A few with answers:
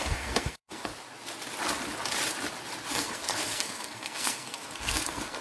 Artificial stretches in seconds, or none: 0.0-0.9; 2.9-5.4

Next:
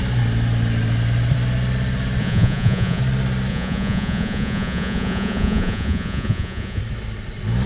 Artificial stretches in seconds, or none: 2.2-3.0; 3.5-6.8